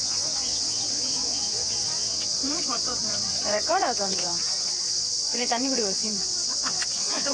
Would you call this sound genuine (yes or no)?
no